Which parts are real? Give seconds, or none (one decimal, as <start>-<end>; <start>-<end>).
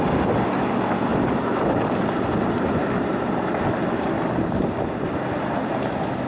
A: 0.0-6.3